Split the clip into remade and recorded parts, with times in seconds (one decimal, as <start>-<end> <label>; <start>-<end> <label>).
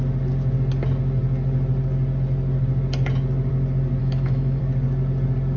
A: 0.0-4.0 recorded; 4.0-4.6 remade; 4.6-5.6 recorded